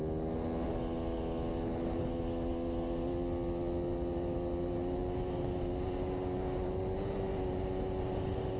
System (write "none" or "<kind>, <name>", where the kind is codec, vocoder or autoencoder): none